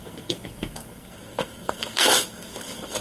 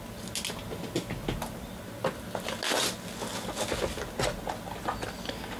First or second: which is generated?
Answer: first